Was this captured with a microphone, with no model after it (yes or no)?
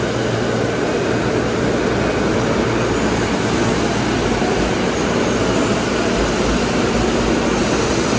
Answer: yes